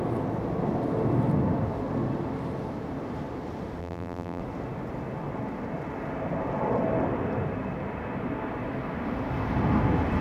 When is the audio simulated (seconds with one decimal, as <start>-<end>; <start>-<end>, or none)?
3.8-4.4